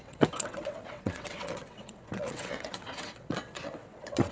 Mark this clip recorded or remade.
remade